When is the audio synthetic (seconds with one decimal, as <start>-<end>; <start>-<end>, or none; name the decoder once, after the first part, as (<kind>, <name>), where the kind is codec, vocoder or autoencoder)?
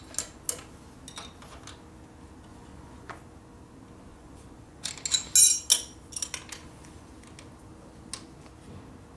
2.5-3.1 (vocoder, Vocos); 4.1-4.9; 6.6-7.1